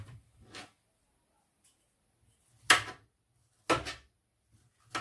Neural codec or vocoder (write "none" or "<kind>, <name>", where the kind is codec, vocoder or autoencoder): none